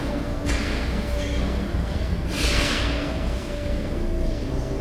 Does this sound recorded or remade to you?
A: remade